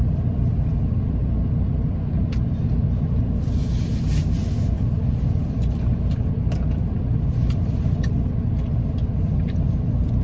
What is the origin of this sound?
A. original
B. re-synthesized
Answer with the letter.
A